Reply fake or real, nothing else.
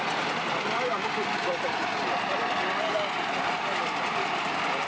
real